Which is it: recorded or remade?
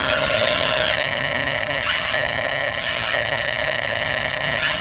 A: remade